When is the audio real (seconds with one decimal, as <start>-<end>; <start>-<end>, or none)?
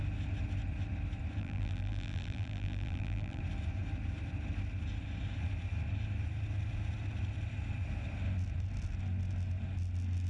0.0-1.4; 3.4-10.3